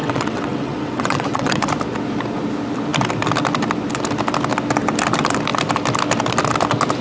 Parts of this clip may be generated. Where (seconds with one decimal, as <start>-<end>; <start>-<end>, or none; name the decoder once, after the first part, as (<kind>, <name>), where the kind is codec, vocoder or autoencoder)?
0.0-1.7 (vocoder, WaveNeXt)